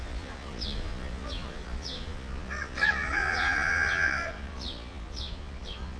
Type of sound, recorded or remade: remade